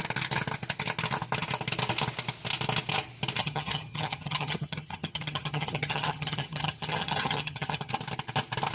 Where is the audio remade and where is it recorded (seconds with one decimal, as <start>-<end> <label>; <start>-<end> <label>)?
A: 0.0-3.4 recorded; 3.4-7.9 remade; 7.9-8.7 recorded